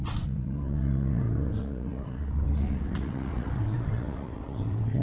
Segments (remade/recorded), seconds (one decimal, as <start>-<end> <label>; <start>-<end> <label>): 0.0-5.0 remade